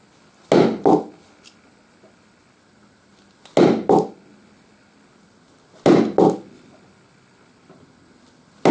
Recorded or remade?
recorded